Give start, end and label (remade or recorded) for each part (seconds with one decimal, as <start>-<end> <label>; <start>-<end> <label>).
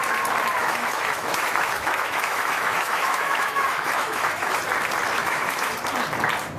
0.0-0.6 recorded; 0.6-4.6 remade; 4.6-5.2 recorded; 5.2-5.7 remade; 5.7-6.6 recorded